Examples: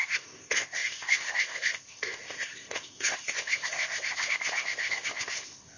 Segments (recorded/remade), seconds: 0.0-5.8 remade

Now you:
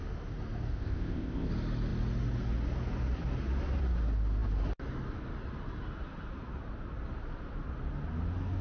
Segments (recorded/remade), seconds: 0.0-0.7 recorded; 0.7-1.5 remade; 1.5-8.6 recorded

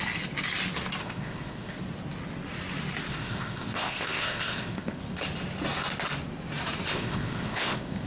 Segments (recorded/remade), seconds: 0.0-1.0 recorded; 1.0-1.8 remade; 1.8-3.1 recorded; 3.1-5.0 remade; 5.0-6.9 recorded; 6.9-8.1 remade

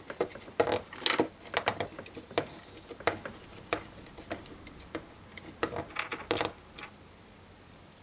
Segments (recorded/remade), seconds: 0.0-8.0 recorded

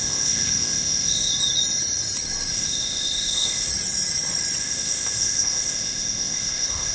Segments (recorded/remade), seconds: 0.0-1.3 remade; 1.3-2.5 recorded; 2.5-3.7 remade; 3.7-4.6 recorded; 4.6-6.9 remade

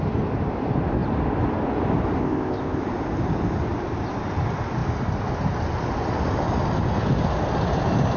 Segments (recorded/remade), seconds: 0.0-2.2 recorded; 2.2-2.8 remade; 2.8-8.2 recorded